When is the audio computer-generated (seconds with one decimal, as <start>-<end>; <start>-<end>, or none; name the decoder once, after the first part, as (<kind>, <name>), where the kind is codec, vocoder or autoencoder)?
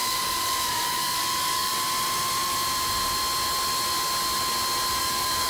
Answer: 0.0-1.7 (codec, DAC); 5.0-5.5